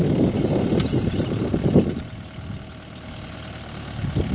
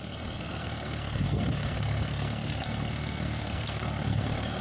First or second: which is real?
first